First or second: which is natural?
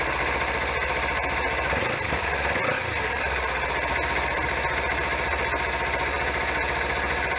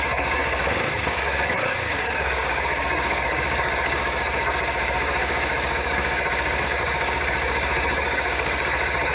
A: first